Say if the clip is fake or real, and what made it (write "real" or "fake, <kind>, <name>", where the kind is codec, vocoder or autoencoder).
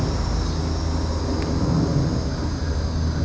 real